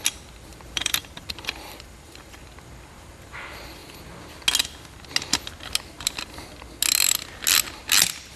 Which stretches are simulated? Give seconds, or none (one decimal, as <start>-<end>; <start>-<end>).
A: 0.5-2.4